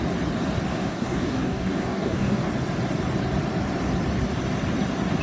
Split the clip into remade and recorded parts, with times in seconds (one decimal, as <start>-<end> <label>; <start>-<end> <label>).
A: 0.0-0.7 recorded; 0.7-2.4 remade; 2.4-5.2 recorded